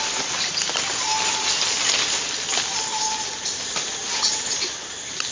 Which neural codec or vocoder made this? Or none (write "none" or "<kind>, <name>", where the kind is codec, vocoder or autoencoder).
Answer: none